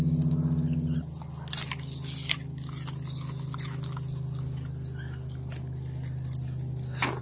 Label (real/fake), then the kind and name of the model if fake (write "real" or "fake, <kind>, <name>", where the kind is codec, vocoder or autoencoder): real